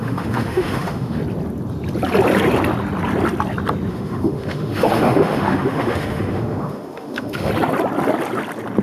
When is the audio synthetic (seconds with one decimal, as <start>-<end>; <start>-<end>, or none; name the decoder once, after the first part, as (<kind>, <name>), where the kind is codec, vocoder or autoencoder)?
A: 0.0-1.2 (autoencoder, DAC-VAE); 3.9-7.5